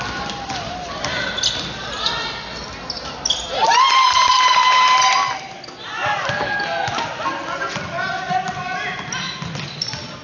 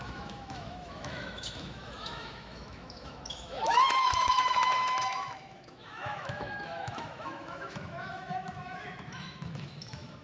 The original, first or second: first